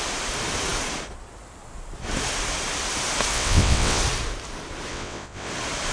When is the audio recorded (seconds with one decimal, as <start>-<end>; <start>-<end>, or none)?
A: 0.0-3.3; 4.0-4.9; 5.5-5.9